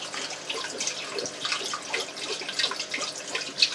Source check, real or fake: real